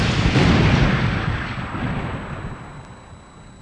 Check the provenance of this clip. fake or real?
real